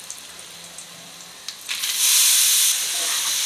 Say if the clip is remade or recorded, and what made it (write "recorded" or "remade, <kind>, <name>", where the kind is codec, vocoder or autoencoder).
recorded